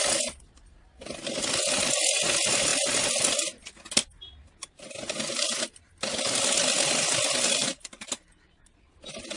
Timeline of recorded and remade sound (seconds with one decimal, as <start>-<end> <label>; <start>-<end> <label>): 0.0-7.7 recorded; 7.7-9.0 remade; 9.0-9.4 recorded